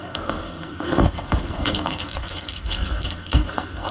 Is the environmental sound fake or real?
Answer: fake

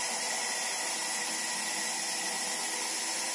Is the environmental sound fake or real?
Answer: real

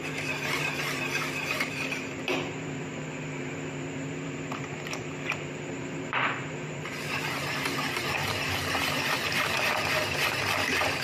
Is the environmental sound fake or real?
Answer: fake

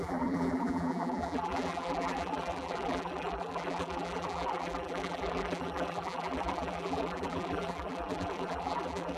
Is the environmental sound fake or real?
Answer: fake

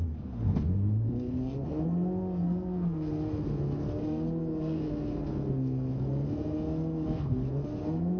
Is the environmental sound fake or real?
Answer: fake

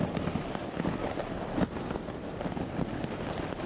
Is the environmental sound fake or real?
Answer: real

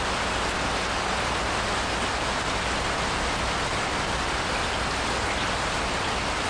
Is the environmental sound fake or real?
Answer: real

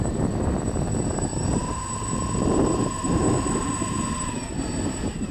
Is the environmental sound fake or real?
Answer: fake